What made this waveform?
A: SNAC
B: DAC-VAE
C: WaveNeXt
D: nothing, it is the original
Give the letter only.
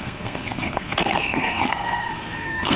A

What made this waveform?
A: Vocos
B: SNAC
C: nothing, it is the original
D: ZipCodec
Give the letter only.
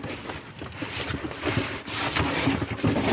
C